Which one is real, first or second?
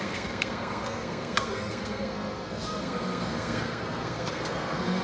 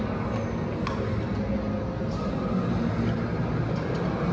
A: second